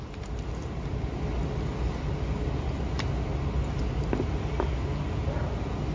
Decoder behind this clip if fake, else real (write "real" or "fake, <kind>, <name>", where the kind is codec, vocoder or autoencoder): real